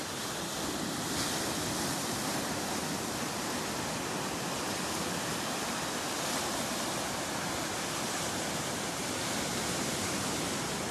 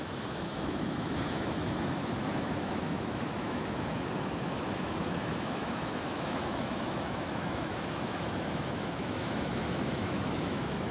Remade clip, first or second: second